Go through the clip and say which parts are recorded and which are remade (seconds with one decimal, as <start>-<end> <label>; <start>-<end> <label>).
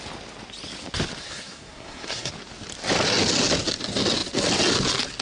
0.0-1.2 recorded; 1.2-2.3 remade; 2.3-5.2 recorded